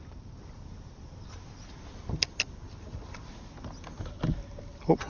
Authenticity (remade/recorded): recorded